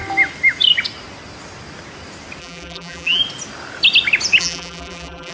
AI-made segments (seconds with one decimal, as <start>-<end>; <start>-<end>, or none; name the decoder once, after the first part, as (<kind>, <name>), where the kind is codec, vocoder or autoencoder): 2.4-3.2 (vocoder, BigVGAN v2); 4.4-5.3